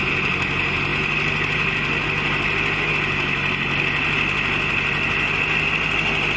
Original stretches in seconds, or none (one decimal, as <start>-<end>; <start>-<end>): 0.0-6.4